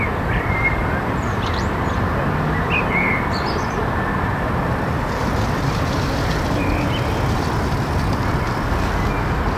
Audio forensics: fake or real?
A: real